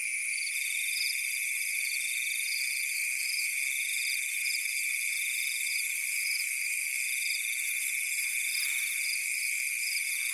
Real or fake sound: real